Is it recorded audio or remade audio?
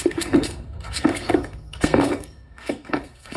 remade